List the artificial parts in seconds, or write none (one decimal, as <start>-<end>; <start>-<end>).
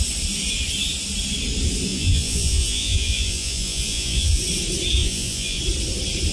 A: 1.9-4.4; 5.0-5.6